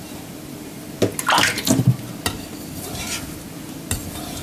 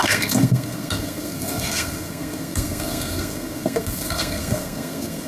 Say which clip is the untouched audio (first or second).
first